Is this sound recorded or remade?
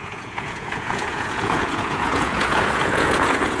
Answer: remade